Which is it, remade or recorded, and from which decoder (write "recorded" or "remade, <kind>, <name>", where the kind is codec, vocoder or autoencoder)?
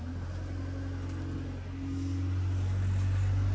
recorded